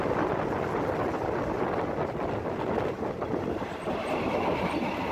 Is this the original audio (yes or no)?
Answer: yes